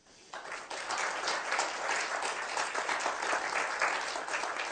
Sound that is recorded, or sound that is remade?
recorded